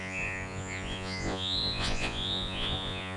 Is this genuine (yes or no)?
no